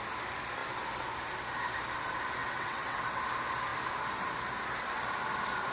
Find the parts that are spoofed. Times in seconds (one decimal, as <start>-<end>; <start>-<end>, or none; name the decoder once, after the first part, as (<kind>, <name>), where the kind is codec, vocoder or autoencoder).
2.4-3.2 (vocoder, WaveNeXt)